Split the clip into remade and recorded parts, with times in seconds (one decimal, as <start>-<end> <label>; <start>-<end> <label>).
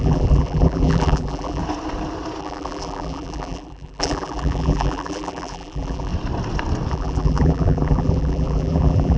0.0-1.6 remade; 1.6-2.4 recorded; 2.4-6.1 remade; 6.1-6.9 recorded; 6.9-9.2 remade